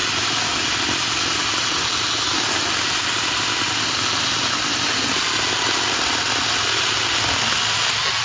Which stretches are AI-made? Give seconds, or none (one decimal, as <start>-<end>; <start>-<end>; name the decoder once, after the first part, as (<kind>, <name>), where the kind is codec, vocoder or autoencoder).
none